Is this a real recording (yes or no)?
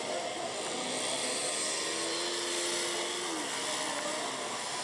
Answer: yes